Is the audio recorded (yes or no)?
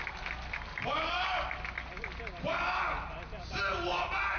yes